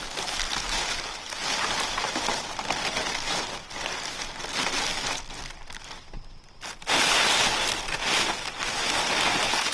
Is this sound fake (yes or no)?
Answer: no